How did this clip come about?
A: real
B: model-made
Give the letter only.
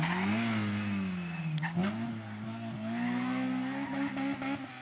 A